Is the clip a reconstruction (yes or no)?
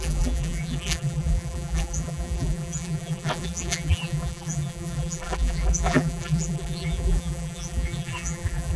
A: yes